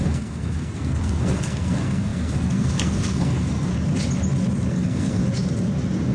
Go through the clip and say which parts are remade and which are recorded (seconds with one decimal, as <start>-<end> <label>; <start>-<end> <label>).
0.0-3.7 remade; 3.7-4.7 recorded; 4.7-5.2 remade; 5.2-6.1 recorded